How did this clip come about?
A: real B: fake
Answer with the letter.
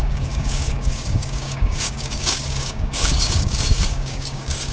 B